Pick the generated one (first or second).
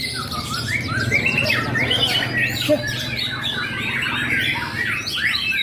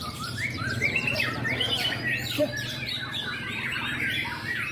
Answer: second